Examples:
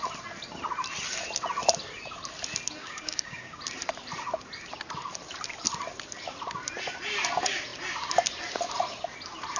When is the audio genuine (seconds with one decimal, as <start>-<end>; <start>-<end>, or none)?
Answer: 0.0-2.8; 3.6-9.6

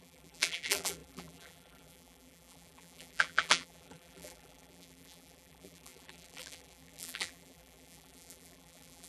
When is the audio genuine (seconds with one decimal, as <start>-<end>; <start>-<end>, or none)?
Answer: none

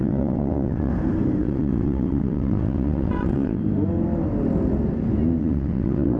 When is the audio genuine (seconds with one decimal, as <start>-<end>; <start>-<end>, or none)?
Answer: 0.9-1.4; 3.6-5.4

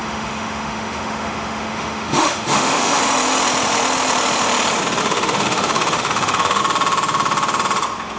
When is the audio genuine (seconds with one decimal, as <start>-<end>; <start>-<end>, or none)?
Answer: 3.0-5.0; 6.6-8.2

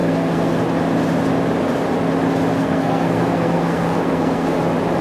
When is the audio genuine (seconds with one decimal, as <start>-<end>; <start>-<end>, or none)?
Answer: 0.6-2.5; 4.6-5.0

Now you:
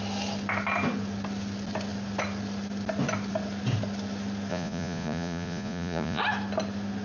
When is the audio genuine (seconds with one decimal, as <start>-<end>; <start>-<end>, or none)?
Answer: 0.0-4.5; 6.2-7.0

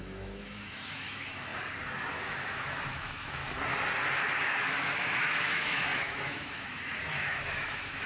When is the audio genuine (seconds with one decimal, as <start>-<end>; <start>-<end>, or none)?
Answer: 1.5-2.1; 3.4-4.4